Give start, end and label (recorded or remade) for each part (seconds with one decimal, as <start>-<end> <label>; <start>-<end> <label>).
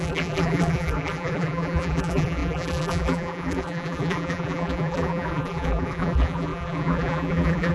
0.0-7.7 remade